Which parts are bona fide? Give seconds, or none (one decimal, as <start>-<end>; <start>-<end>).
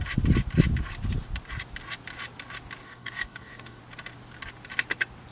0.0-2.8; 3.8-5.3